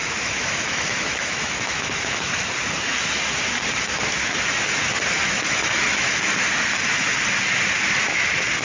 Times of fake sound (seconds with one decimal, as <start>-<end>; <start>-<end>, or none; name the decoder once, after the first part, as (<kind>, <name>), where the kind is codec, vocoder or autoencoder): 0.0-2.3 (autoencoder, DAC-VAE); 5.2-6.5